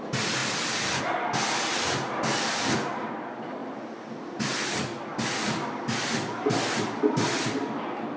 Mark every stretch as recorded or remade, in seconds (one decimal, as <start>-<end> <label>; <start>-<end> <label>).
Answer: 0.0-8.2 recorded